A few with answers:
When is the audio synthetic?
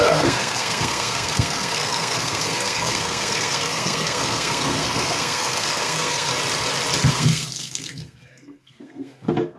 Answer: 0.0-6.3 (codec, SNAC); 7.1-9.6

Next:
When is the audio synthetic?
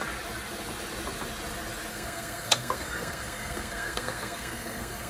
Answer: 1.9-5.1 (codec, SNAC)